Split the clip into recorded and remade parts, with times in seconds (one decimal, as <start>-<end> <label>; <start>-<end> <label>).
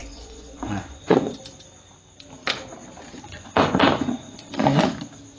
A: 0.0-1.3 remade; 1.3-3.1 recorded; 3.1-4.9 remade; 4.9-5.4 recorded